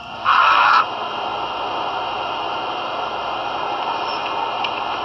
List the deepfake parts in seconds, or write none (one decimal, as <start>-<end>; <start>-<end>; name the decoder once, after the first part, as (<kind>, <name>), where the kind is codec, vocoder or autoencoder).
0.0-0.8 (codec, SNAC)